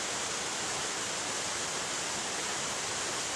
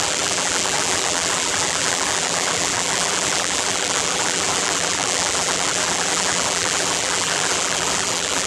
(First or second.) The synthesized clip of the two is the second